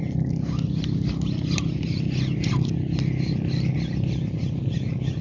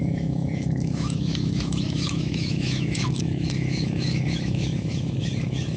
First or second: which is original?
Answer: first